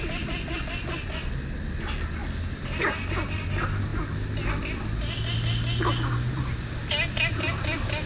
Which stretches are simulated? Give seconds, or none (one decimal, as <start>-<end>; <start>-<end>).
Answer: none